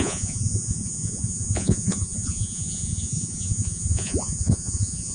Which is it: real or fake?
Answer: fake